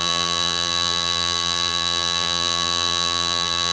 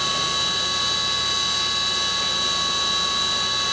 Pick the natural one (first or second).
second